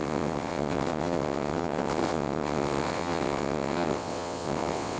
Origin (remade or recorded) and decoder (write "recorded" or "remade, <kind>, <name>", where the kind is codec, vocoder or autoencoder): remade, vocoder, WaveNeXt